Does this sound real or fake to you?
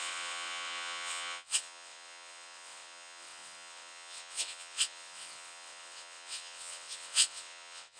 fake